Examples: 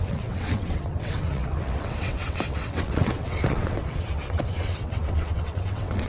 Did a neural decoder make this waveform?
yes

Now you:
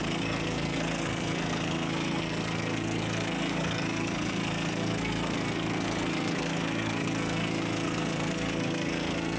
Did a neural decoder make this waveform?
yes